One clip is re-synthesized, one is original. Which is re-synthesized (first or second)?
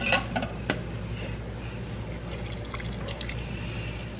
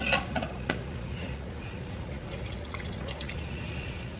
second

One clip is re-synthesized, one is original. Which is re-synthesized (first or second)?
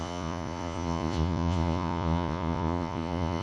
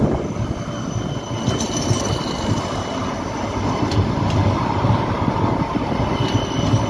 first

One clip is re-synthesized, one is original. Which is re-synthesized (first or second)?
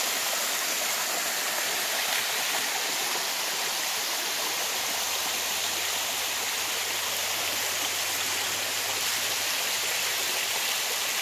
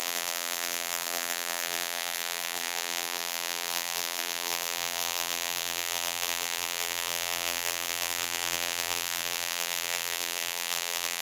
second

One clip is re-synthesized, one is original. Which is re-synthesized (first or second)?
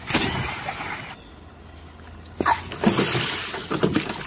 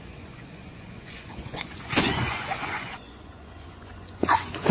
second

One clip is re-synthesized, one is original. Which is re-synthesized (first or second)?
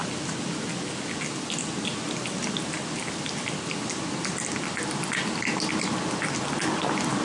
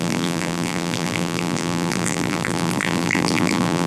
second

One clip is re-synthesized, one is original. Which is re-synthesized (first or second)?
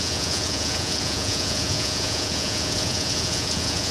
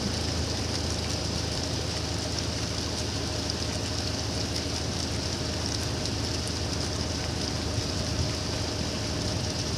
first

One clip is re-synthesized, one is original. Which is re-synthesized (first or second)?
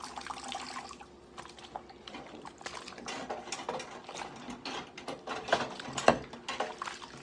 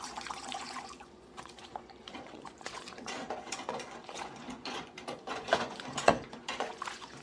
second